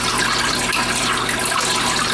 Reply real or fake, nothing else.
real